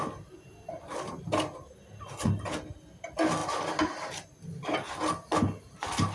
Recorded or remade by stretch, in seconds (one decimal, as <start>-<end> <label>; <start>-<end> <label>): 0.0-6.1 recorded